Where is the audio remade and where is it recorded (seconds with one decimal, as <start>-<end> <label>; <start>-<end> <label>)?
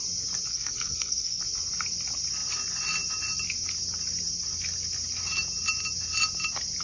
0.0-0.5 recorded; 0.5-1.4 remade; 1.4-6.8 recorded